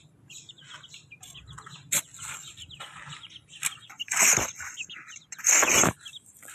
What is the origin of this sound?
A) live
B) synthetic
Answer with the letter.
A